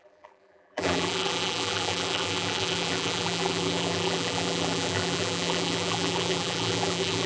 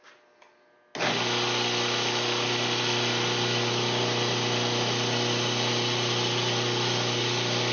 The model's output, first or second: first